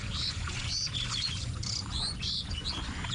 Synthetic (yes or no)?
yes